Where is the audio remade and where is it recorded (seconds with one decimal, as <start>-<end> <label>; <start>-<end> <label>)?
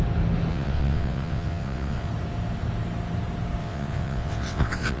0.0-0.5 recorded; 0.5-2.1 remade; 2.1-3.6 recorded; 3.6-5.0 remade